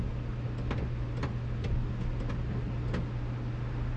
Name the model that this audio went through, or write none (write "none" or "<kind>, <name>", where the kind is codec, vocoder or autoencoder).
none